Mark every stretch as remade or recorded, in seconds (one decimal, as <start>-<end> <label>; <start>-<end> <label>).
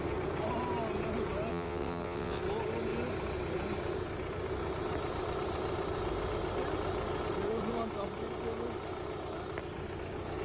0.0-1.5 recorded; 1.5-2.4 remade; 2.4-10.4 recorded